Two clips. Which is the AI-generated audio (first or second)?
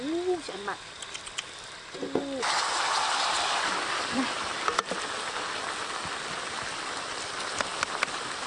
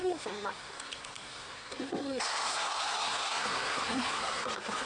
second